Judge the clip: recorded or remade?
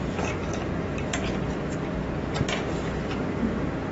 recorded